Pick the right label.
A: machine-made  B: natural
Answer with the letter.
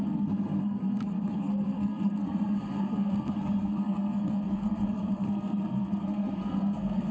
A